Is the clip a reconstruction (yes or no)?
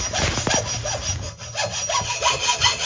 no